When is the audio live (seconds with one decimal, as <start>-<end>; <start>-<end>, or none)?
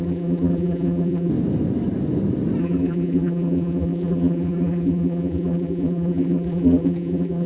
1.3-2.6